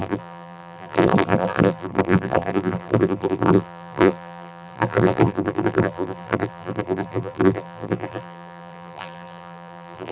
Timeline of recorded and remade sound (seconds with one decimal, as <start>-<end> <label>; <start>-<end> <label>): 0.0-10.1 remade